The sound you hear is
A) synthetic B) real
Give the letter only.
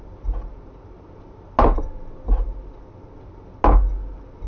B